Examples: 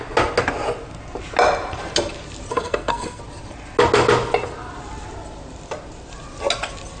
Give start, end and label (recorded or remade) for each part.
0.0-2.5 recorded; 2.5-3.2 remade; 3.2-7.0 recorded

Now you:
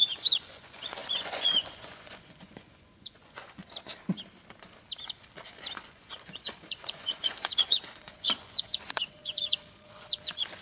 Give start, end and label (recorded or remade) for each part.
0.0-3.6 remade; 3.6-5.8 recorded; 5.8-10.6 remade